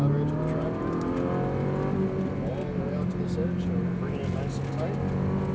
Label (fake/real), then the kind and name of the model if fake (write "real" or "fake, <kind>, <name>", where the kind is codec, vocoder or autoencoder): real